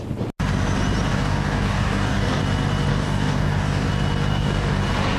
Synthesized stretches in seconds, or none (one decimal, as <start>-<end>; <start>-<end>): 1.1-2.4; 2.9-3.9; 4.3-4.8